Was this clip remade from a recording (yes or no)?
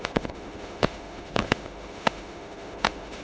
yes